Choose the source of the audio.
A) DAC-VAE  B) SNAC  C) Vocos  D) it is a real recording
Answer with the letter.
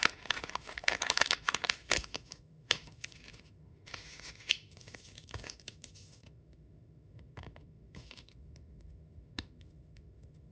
A